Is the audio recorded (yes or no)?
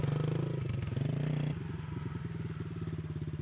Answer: yes